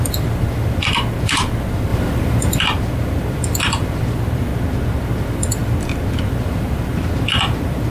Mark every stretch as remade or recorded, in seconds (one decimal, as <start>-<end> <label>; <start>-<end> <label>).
0.0-4.5 remade; 4.5-5.1 recorded; 5.1-5.6 remade; 5.6-6.1 recorded; 6.1-7.9 remade